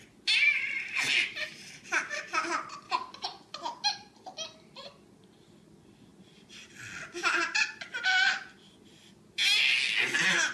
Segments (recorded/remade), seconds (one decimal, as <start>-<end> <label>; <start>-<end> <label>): 0.0-10.5 recorded